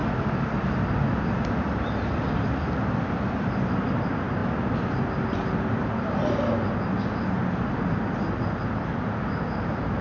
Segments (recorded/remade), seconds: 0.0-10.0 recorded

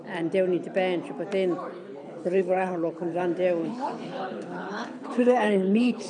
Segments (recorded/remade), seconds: 0.0-2.0 recorded; 2.0-3.2 remade; 3.2-3.6 recorded; 3.6-6.1 remade

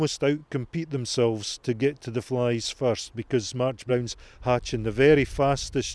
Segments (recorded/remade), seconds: 0.0-5.9 recorded

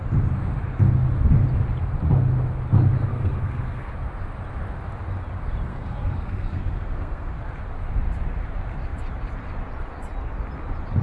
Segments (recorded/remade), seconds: 0.0-3.1 recorded; 3.1-3.9 remade; 3.9-5.7 recorded; 5.7-7.4 remade; 7.4-11.0 recorded

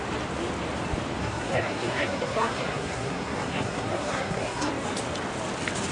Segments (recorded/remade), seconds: 0.0-1.2 recorded; 1.2-4.7 remade; 4.7-5.9 recorded

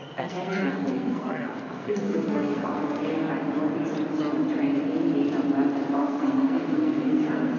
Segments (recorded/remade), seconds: 0.0-3.3 remade; 3.3-5.9 recorded; 5.9-7.6 remade

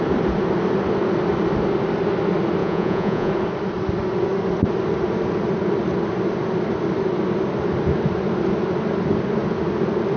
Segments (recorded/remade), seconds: 0.0-2.6 recorded; 2.6-3.3 remade; 3.3-10.2 recorded